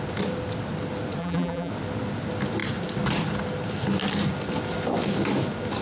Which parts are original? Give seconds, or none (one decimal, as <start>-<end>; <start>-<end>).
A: 0.0-1.2; 1.7-5.8